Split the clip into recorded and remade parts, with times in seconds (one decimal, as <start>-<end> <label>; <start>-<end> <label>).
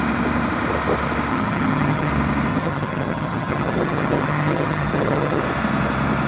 0.0-1.3 recorded; 1.3-2.1 remade; 2.1-2.5 recorded; 2.5-5.4 remade; 5.4-6.3 recorded